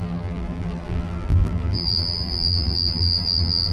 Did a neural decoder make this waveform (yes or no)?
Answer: yes